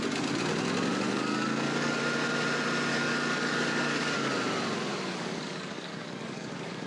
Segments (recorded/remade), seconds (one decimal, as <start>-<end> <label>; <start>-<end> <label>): 0.0-0.9 recorded; 0.9-2.0 remade; 2.0-2.9 recorded; 2.9-4.3 remade; 4.3-4.9 recorded; 4.9-6.9 remade

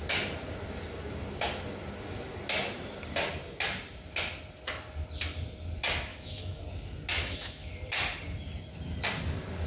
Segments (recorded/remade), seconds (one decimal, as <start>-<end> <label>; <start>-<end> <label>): 0.0-6.1 recorded; 6.1-6.6 remade; 6.6-7.2 recorded; 7.2-7.7 remade; 7.7-9.7 recorded

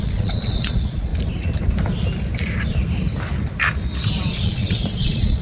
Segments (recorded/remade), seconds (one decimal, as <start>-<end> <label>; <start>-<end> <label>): 0.0-1.1 remade; 1.1-4.3 recorded; 4.3-5.4 remade

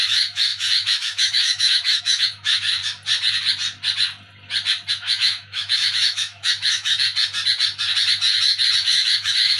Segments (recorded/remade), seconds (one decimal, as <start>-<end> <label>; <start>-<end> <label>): 0.0-2.8 remade; 2.8-4.9 recorded; 4.9-6.9 remade; 6.9-8.8 recorded; 8.8-9.6 remade

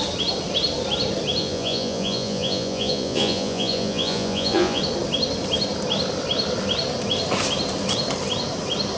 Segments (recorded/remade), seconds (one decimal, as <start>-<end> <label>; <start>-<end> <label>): 0.0-1.4 recorded; 1.4-4.8 remade; 4.8-9.0 recorded

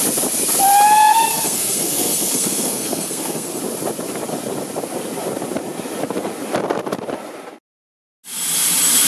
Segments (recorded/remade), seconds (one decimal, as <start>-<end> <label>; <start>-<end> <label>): 0.0-1.3 recorded; 1.3-3.6 remade; 3.6-9.1 recorded

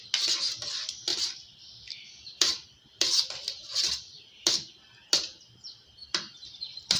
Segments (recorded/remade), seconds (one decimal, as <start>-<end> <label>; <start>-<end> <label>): 0.0-1.1 recorded; 1.1-4.7 remade; 4.7-6.0 recorded; 6.0-7.0 remade

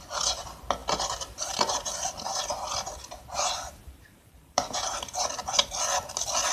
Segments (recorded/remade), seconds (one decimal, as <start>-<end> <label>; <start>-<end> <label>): 0.0-0.8 recorded; 0.8-2.6 remade; 2.6-3.8 recorded; 3.8-5.0 remade; 5.0-6.5 recorded